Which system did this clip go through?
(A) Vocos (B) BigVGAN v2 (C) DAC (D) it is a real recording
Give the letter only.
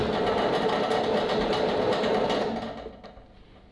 D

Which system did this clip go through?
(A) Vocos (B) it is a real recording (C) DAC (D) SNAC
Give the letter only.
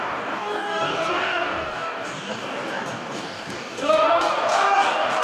C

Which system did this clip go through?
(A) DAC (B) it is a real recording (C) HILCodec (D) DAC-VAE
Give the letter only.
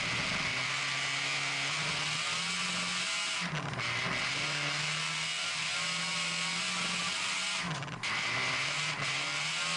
B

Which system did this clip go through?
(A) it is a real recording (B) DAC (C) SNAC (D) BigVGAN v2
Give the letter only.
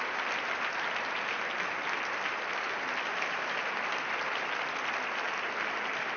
A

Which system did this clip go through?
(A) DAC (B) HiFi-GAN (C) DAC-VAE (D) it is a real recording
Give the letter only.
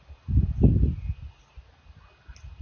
D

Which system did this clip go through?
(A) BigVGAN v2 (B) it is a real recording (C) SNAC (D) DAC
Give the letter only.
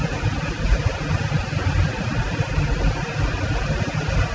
B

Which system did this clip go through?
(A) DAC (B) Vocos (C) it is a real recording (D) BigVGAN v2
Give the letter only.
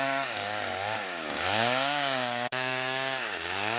A